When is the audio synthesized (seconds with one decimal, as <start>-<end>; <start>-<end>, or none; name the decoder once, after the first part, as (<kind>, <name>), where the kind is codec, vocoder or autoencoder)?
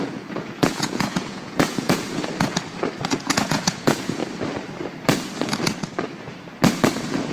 0.0-2.2 (vocoder, Vocos); 3.1-4.2